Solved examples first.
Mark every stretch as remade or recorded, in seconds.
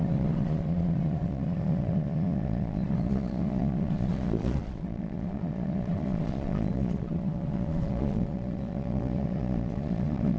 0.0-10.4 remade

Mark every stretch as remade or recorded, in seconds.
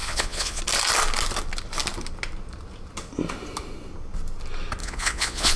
0.0-0.6 remade; 0.6-4.8 recorded; 4.8-5.6 remade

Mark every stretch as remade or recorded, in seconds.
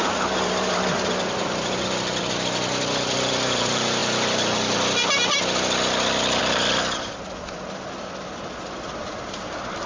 0.0-9.9 recorded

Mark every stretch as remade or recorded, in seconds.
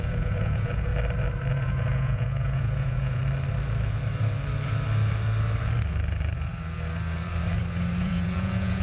0.0-0.9 remade; 0.9-1.5 recorded; 1.5-3.2 remade; 3.2-8.0 recorded; 8.0-8.8 remade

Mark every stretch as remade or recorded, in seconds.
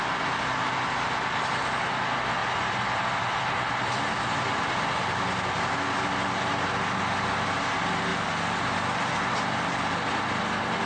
0.0-10.9 recorded